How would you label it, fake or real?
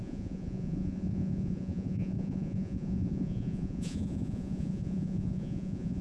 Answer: fake